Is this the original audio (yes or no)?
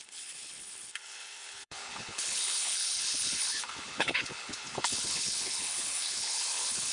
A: no